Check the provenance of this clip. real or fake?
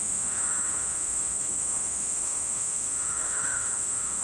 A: fake